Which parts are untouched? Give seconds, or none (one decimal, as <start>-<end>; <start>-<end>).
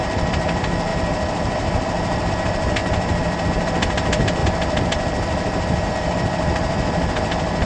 4.4-5.9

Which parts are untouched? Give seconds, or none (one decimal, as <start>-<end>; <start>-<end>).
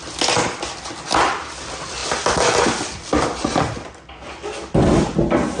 0.0-5.6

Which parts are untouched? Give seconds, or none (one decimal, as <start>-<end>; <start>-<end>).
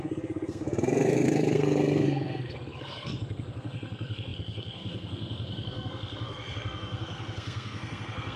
none